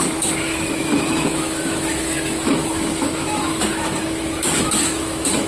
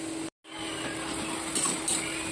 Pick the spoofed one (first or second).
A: first